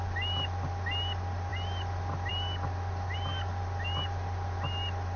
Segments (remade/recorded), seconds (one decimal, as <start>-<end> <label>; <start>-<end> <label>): 0.0-5.2 recorded